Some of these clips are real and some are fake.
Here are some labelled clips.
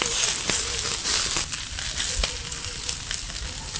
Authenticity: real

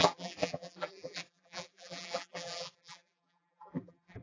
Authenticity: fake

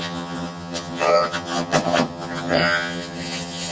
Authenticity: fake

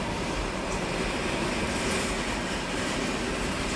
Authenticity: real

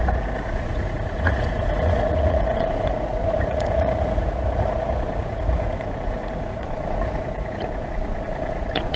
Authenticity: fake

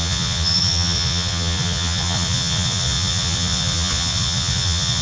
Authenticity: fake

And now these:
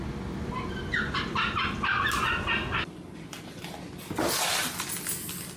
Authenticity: real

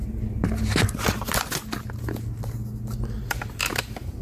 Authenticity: real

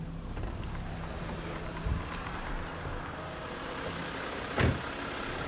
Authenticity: real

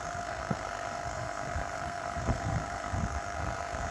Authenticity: fake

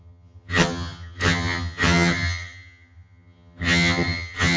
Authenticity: fake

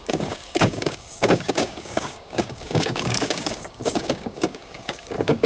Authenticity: fake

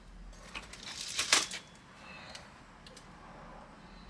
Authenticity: real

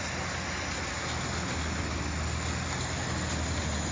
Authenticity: real